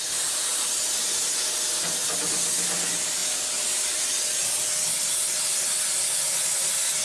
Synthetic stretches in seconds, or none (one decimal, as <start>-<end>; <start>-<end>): none